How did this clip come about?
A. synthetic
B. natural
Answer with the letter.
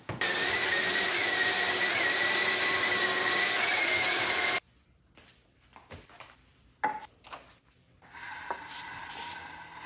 A